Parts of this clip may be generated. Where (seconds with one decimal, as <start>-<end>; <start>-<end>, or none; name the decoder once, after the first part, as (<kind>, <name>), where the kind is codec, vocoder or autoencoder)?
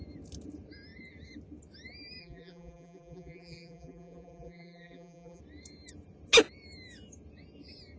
2.2-5.4 (vocoder, BigVGAN v2)